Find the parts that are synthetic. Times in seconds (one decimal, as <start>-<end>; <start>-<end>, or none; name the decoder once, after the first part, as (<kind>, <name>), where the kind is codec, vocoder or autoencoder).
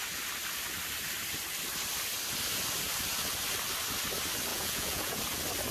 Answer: 4.5-5.2 (vocoder, Vocos)